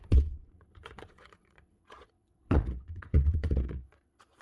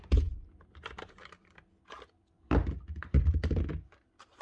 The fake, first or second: first